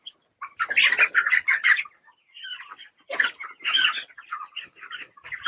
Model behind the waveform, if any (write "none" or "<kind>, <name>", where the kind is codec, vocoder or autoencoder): none